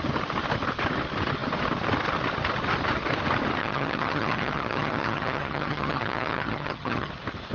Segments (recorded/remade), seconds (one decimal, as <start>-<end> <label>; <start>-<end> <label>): 0.0-3.6 recorded; 3.6-7.1 remade; 7.1-7.5 recorded